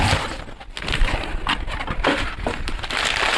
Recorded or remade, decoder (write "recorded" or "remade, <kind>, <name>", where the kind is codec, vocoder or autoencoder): recorded